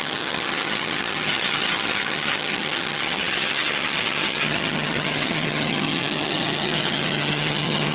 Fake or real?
fake